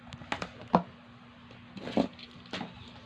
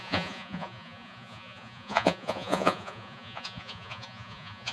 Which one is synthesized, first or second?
second